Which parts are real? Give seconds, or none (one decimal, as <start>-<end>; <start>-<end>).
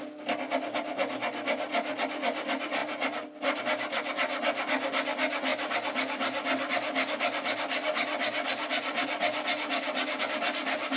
0.0-11.0